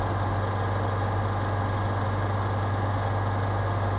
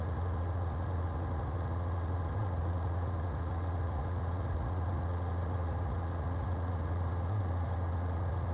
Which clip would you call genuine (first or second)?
first